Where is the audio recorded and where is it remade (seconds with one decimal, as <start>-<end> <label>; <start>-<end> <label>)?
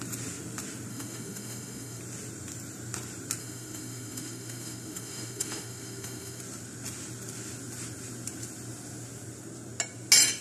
0.0-0.9 recorded; 0.9-2.0 remade; 2.0-3.4 recorded; 3.4-6.4 remade; 6.4-10.4 recorded